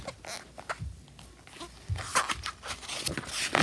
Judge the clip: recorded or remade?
recorded